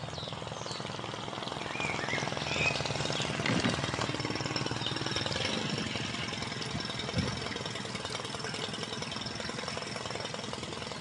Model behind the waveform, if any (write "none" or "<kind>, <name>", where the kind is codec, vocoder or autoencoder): none